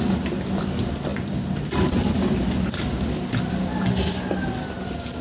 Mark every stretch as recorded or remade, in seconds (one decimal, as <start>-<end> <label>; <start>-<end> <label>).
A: 0.0-5.2 recorded